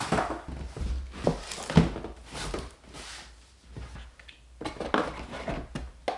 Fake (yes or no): no